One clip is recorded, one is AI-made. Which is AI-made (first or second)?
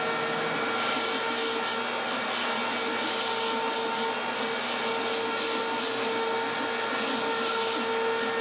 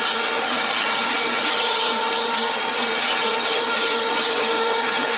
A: second